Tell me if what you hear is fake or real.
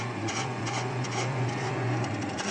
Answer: fake